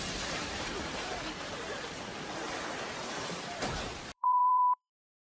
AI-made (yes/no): yes